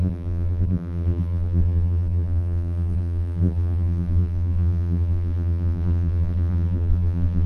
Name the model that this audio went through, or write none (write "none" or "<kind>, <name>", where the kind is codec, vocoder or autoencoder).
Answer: vocoder, BigVGAN v2